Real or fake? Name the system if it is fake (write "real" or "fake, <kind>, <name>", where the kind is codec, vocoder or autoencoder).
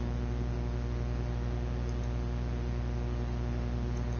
real